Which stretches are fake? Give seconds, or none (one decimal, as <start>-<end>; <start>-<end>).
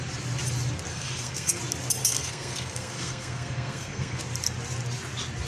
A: 0.9-1.6; 2.0-4.2